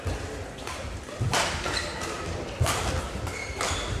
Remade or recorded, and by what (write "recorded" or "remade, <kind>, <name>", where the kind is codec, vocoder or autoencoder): recorded